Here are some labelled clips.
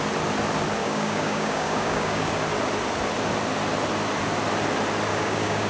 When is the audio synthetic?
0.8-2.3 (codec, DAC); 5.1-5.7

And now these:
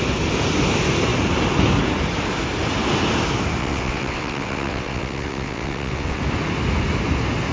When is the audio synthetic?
3.6-6.2 (vocoder, WaveNeXt)

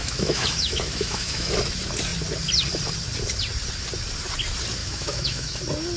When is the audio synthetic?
0.0-1.5 (autoencoder, DAC-VAE); 4.8-5.6

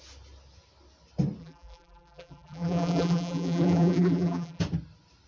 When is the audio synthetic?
1.4-4.6 (vocoder, BigVGAN v2)

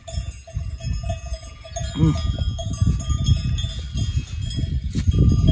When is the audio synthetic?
none

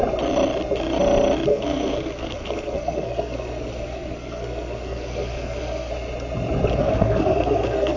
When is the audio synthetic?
1.5-5.9 (codec, SNAC); 6.8-8.0

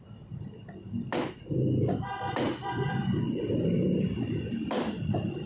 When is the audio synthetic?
0.0-0.6 (vocoder, BigVGAN v2); 1.7-3.0; 4.7-5.5